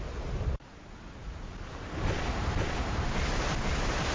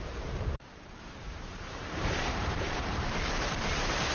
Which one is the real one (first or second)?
first